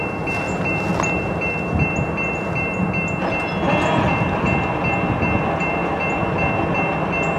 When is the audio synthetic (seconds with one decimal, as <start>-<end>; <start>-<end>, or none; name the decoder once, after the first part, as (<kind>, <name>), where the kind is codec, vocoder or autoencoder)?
none